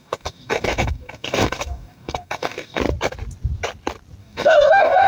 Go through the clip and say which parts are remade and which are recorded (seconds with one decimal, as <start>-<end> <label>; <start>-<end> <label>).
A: 0.0-2.8 remade; 2.8-4.2 recorded; 4.2-5.1 remade